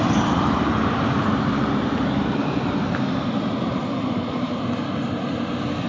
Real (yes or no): no